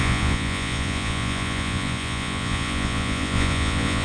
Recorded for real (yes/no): no